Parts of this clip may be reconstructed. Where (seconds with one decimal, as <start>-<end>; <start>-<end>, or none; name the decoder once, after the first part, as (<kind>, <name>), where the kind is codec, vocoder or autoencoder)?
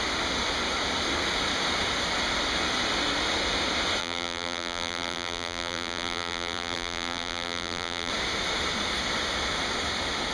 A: 4.0-8.1 (vocoder, BigVGAN v2)